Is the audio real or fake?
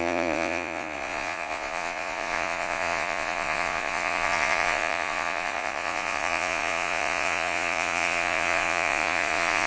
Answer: fake